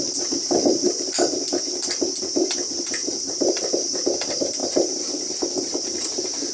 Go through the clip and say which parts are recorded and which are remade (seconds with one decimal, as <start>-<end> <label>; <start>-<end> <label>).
0.0-3.0 recorded; 3.0-3.7 remade; 3.7-4.6 recorded; 4.6-6.5 remade